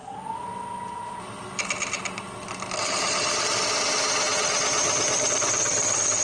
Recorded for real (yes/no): yes